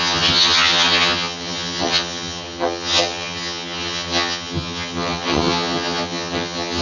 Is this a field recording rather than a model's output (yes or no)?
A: no